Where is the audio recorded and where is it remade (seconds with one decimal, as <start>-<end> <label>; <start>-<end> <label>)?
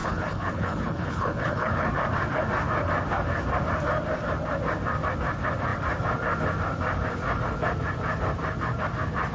0.0-1.9 remade; 1.9-9.3 recorded